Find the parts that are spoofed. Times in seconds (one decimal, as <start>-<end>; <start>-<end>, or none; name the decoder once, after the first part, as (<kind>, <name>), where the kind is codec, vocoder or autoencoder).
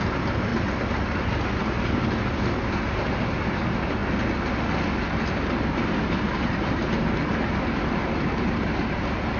0.0-0.5 (vocoder, BigVGAN v2); 1.8-4.0; 5.3-9.4